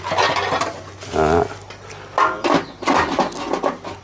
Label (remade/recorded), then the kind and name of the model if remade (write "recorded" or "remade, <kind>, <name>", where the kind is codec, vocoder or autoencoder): recorded